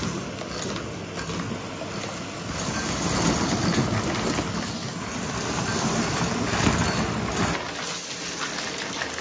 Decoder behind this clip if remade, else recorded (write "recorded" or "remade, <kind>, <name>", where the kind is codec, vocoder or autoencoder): recorded